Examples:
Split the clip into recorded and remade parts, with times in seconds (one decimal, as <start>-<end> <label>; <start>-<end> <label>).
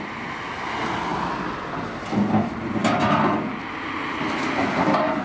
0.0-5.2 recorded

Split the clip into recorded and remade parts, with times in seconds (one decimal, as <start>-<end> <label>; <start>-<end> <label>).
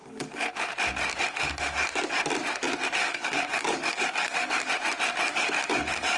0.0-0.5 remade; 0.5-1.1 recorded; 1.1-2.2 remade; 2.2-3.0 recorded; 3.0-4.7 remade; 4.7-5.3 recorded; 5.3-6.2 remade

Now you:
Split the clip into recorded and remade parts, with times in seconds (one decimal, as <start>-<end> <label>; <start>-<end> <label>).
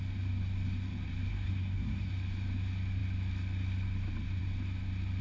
0.0-1.3 recorded; 1.3-2.1 remade; 2.1-5.2 recorded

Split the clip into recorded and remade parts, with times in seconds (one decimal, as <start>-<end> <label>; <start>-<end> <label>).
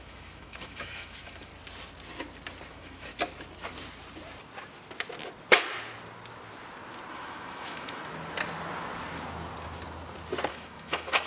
0.0-1.5 remade; 1.5-2.7 recorded; 2.7-3.1 remade; 3.1-7.1 recorded; 7.1-8.1 remade; 8.1-10.5 recorded; 10.5-11.3 remade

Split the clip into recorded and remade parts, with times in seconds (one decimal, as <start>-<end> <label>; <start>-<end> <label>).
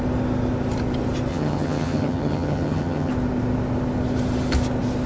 0.0-1.3 recorded; 1.3-3.1 remade; 3.1-5.1 recorded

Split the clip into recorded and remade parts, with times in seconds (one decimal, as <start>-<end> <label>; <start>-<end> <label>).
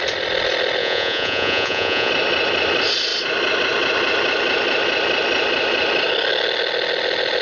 0.0-0.8 recorded; 0.8-2.1 remade; 2.1-7.4 recorded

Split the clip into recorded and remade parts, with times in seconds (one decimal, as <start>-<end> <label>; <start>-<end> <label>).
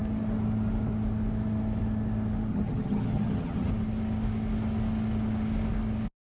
0.0-2.5 recorded; 2.5-3.7 remade; 3.7-6.3 recorded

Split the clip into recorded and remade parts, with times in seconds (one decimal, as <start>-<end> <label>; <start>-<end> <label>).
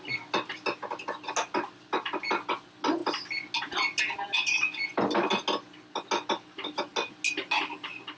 0.0-8.2 recorded